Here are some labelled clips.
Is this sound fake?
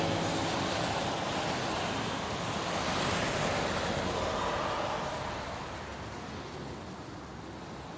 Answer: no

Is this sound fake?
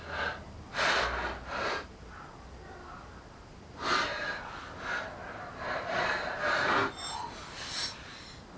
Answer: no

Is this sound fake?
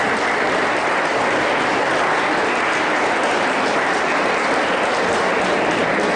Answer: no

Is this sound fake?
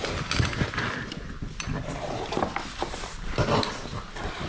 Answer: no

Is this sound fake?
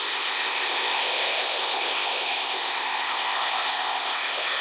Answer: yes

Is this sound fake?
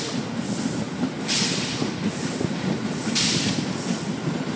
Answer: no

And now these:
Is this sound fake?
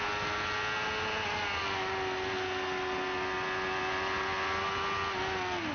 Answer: no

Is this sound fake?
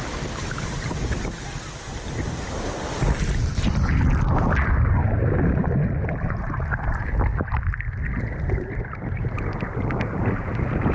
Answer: no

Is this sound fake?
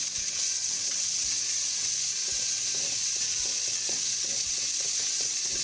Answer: yes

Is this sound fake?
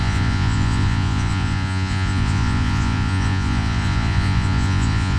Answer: yes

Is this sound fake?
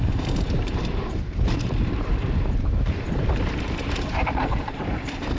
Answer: yes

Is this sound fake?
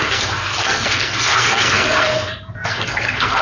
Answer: yes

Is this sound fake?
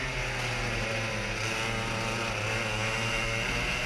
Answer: no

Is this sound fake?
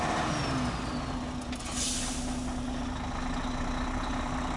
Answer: no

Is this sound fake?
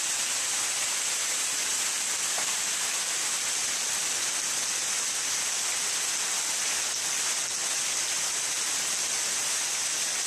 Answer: no